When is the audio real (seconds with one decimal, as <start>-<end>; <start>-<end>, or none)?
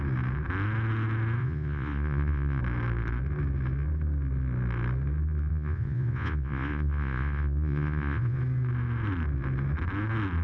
0.0-1.4; 2.6-5.5; 8.4-10.4